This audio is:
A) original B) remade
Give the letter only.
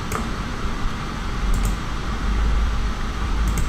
B